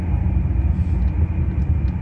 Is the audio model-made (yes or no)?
no